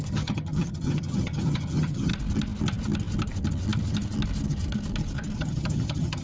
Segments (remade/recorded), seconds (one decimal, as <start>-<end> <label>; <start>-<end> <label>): 0.0-2.1 remade; 2.1-5.4 recorded; 5.4-6.2 remade